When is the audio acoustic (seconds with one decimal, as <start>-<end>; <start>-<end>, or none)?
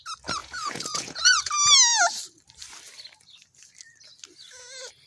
0.0-0.4; 1.5-5.1